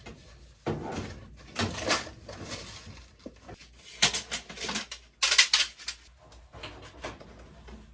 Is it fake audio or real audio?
real